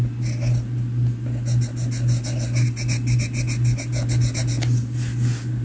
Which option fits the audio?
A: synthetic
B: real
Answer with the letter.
B